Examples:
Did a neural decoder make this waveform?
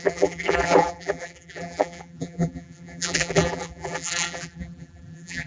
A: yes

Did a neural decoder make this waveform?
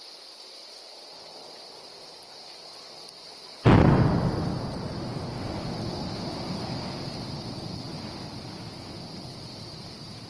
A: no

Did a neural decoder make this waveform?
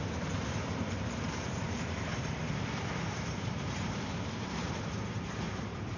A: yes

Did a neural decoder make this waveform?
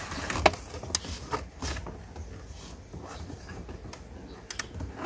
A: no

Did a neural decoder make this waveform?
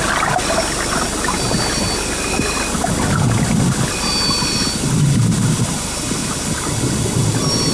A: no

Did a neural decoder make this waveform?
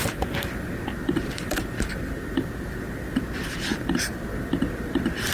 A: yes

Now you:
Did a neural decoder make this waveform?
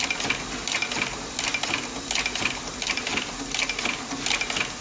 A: no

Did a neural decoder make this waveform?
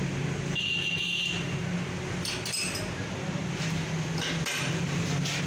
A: no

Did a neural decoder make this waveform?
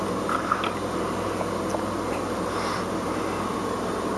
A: no